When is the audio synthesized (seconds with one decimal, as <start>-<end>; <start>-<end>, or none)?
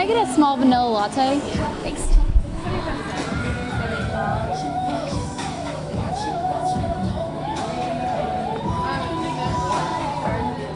1.8-2.7; 4.3-7.6